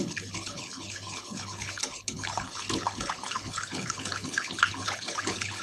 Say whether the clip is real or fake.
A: fake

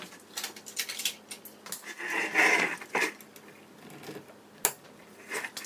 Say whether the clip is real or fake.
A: real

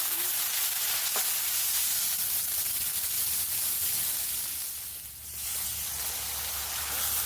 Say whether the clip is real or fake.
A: real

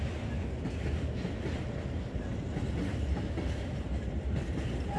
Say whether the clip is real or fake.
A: real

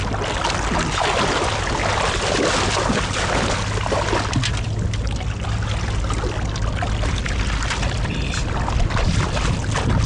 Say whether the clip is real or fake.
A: real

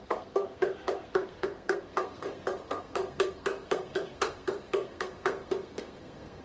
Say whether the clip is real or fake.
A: fake